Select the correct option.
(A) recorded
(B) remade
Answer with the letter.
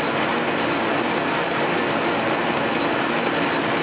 A